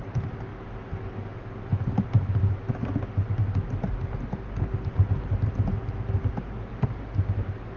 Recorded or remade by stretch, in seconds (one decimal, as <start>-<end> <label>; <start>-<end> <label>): 0.0-7.8 recorded